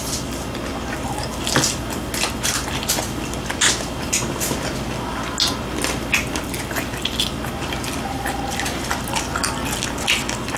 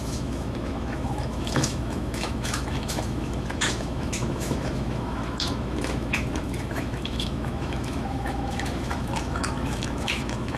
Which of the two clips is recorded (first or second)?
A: first